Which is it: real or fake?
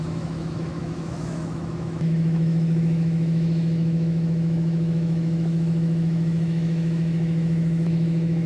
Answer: fake